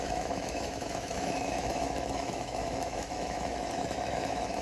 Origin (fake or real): fake